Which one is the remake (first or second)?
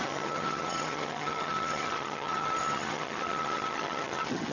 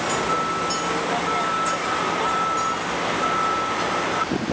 first